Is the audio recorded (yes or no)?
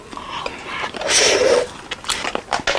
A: yes